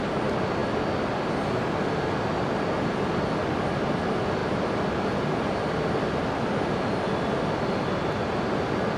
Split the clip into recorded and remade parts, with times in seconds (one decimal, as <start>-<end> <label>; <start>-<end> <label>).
0.0-9.0 recorded